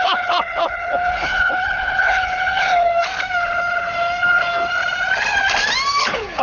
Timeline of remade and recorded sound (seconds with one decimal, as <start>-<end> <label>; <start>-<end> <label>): 0.0-2.9 remade; 2.9-6.0 recorded; 6.0-6.4 remade